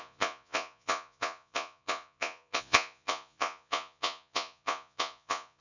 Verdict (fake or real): fake